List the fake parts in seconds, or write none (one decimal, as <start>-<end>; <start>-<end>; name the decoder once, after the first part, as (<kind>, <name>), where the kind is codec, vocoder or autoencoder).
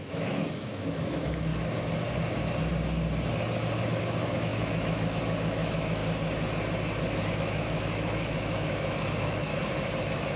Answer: 0.0-1.5 (autoencoder, DAC-VAE); 4.0-6.0; 7.3-9.5; 10.0-10.4